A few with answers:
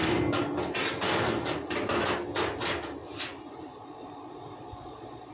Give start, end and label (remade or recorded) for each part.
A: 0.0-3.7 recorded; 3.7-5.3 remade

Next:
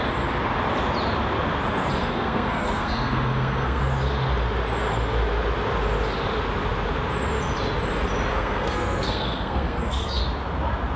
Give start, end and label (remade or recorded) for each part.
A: 0.0-2.0 recorded; 2.0-3.8 remade; 3.8-8.3 recorded; 8.3-10.2 remade; 10.2-11.0 recorded